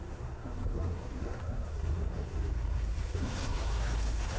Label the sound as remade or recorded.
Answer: remade